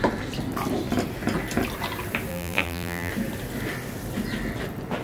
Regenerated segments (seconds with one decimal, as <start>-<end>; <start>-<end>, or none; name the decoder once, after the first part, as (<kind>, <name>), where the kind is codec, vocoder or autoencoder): 2.3-3.1 (vocoder, BigVGAN v2)